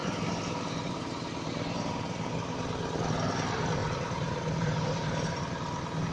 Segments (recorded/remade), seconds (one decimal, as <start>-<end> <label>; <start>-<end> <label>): 0.0-2.3 remade; 2.3-3.8 recorded; 3.8-5.4 remade; 5.4-6.1 recorded